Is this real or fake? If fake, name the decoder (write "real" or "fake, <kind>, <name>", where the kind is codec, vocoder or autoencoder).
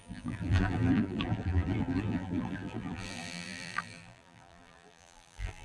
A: fake, vocoder, BigVGAN v2